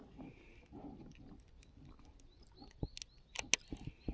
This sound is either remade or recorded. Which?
recorded